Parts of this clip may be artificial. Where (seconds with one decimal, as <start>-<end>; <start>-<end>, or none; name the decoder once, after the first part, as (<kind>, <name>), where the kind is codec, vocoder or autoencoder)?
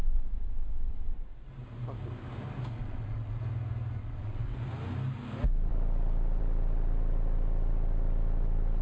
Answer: 0.0-1.5 (vocoder, WaveNeXt); 2.8-3.4; 4.0-4.6